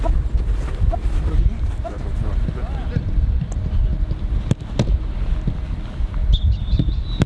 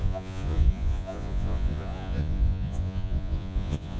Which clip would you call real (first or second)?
first